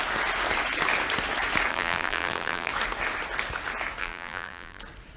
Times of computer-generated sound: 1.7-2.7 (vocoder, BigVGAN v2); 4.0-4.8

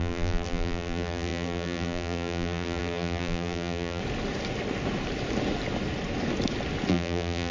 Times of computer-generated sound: 0.0-4.0 (vocoder, BigVGAN v2); 6.9-7.5

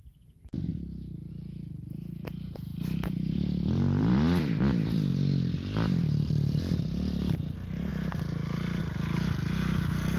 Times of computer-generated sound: 2.7-7.4 (vocoder, BigVGAN v2)

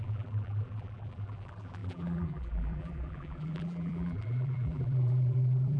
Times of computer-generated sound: 0.0-5.8 (vocoder, BigVGAN v2)

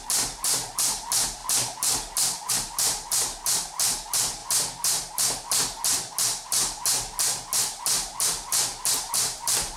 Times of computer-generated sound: 0.0-1.4 (vocoder, BigVGAN v2); 2.5-4.4; 9.1-9.8

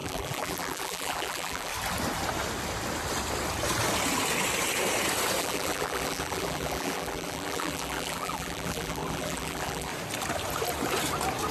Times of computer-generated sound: 0.0-1.7 (vocoder, BigVGAN v2); 5.4-9.9

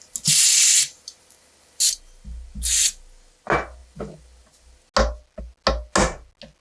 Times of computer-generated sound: none